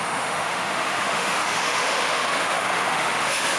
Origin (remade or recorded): remade